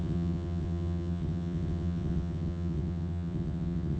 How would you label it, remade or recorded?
remade